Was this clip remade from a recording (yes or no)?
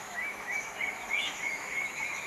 yes